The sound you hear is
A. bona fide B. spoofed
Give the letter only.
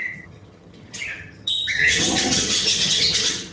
B